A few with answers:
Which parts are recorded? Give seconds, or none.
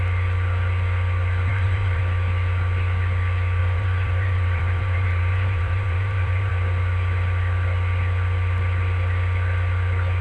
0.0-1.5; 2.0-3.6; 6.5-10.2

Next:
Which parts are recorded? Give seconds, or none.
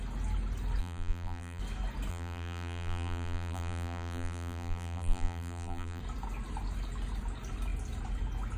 0.0-0.8; 1.6-2.1; 6.0-8.6